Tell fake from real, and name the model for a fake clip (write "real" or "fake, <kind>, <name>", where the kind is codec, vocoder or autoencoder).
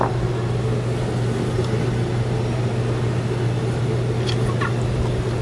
real